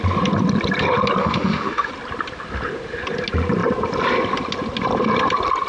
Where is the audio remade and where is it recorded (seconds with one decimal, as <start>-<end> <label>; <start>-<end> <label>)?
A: 0.0-1.2 recorded; 1.2-1.9 remade; 1.9-5.7 recorded